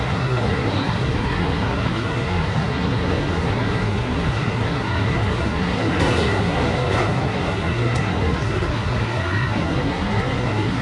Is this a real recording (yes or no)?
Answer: no